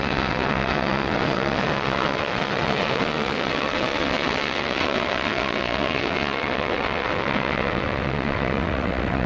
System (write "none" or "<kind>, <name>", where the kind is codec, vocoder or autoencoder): vocoder, WaveNeXt